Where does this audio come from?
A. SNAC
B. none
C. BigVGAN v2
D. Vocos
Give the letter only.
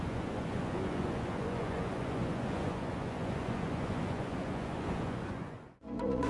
D